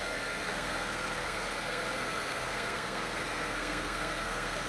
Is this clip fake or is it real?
fake